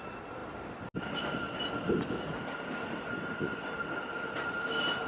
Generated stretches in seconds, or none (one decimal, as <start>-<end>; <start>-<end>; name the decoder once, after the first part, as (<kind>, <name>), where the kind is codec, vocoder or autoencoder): none